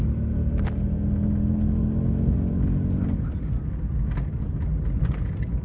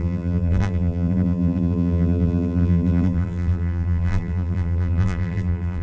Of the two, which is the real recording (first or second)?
first